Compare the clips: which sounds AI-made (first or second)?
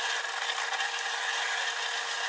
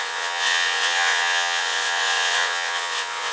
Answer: second